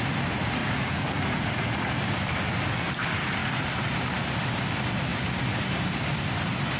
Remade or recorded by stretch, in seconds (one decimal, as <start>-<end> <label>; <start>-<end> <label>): 0.0-0.6 recorded; 0.6-1.9 remade; 1.9-6.8 recorded

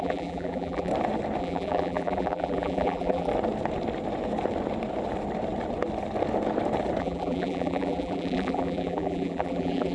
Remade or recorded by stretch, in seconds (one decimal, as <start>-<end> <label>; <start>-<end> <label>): 0.0-0.9 remade; 0.9-1.4 recorded; 1.4-3.3 remade; 3.3-7.0 recorded; 7.0-9.9 remade

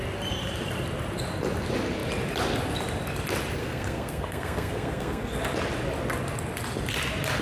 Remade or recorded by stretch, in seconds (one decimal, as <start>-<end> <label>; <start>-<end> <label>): 0.0-3.6 recorded; 3.6-5.3 remade; 5.3-7.4 recorded

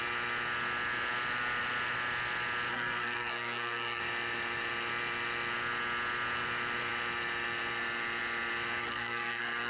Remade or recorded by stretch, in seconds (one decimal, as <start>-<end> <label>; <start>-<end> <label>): 0.0-2.7 recorded; 2.7-4.0 remade; 4.0-8.8 recorded; 8.8-9.7 remade

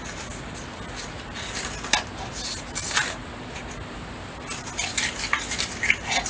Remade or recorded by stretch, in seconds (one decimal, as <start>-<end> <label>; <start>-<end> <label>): 0.0-6.3 recorded

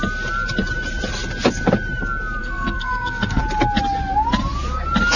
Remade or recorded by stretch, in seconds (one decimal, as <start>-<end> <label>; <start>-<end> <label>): 0.0-2.4 recorded; 2.4-3.4 remade; 3.4-5.2 recorded

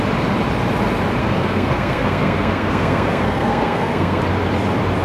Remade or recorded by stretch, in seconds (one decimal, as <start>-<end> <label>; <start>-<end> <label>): 0.0-1.2 recorded; 1.2-4.2 remade; 4.2-5.0 recorded

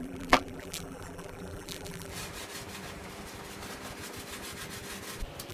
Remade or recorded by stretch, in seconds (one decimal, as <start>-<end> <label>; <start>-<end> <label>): 0.0-2.1 remade; 2.1-5.5 recorded